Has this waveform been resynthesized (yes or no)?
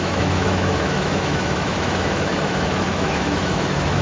yes